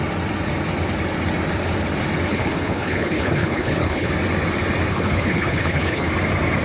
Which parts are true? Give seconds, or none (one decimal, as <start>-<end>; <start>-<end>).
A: 0.0-2.3; 4.1-4.9; 6.1-6.6